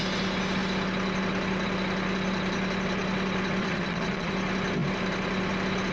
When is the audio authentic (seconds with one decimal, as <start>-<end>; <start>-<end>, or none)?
0.0-3.6; 4.3-5.9